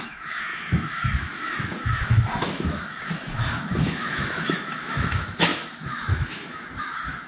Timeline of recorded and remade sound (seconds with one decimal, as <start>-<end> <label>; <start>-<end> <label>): 0.0-7.3 remade